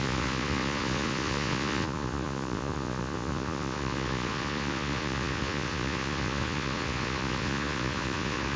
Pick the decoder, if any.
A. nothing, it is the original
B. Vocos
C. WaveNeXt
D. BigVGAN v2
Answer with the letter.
B